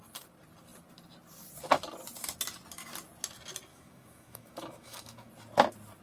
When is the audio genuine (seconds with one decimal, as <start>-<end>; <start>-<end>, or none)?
0.0-3.7; 5.3-6.0